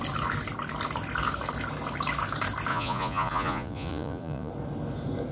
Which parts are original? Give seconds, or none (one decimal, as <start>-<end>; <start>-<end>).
0.0-2.7; 4.5-5.3